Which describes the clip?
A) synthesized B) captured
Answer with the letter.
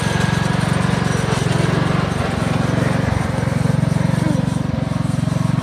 B